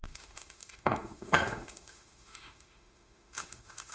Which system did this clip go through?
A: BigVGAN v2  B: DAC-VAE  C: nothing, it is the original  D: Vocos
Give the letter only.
B